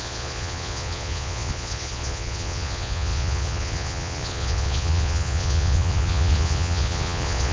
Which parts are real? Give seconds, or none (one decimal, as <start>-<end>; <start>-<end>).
none